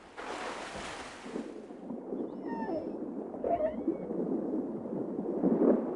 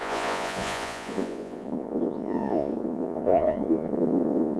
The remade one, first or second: second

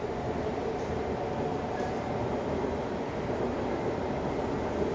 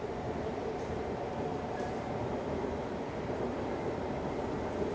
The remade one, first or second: second